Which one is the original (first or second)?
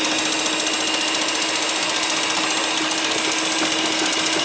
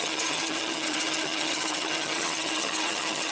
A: first